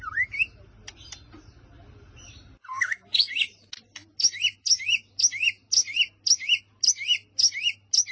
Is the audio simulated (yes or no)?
no